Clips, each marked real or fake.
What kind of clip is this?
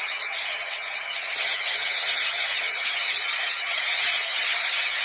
fake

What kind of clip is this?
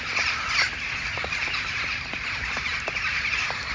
real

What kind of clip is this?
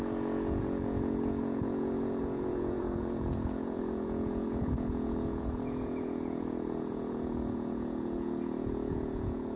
fake